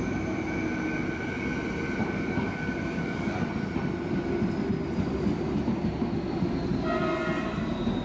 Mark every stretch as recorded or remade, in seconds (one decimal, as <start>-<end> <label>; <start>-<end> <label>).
0.0-2.0 recorded; 2.0-3.5 remade; 3.5-8.0 recorded

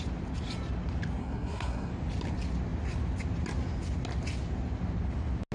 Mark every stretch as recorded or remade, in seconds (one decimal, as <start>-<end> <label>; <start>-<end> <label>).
0.0-1.2 recorded; 1.2-1.9 remade; 1.9-5.5 recorded

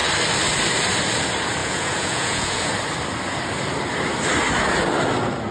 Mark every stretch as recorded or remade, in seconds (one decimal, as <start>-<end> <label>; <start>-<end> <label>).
0.0-1.6 recorded; 1.6-2.7 remade; 2.7-5.5 recorded